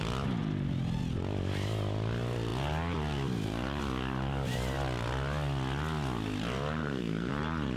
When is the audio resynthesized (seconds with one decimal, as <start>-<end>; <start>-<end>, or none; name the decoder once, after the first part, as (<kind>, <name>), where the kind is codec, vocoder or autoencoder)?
6.8-7.3 (codec, SNAC)